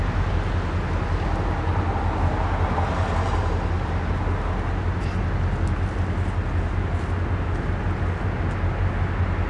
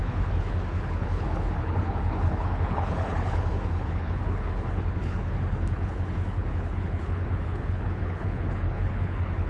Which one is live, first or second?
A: first